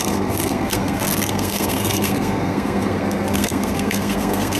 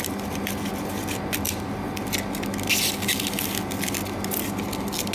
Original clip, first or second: second